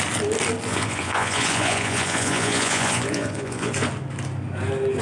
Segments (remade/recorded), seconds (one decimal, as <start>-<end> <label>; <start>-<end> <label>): 0.0-0.7 recorded; 0.7-3.7 remade; 3.7-5.0 recorded